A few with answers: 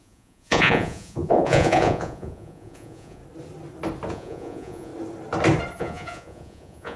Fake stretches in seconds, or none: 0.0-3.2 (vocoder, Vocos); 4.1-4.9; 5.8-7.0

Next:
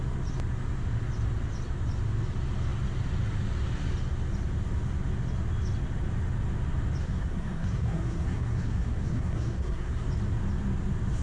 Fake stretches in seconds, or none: 7.0-10.0 (codec, SNAC)

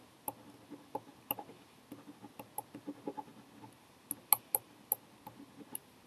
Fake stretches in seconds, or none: none

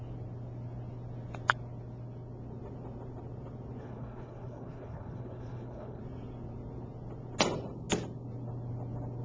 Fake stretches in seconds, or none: 3.8-6.0 (codec, HILCodec)

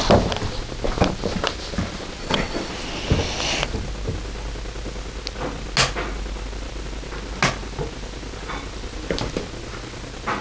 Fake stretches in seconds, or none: 2.2-2.7 (vocoder, WaveNeXt)